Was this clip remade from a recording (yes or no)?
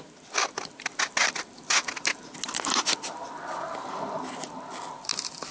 no